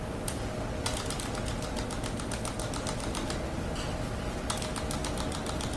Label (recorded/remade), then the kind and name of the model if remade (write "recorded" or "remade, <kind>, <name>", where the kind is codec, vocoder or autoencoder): recorded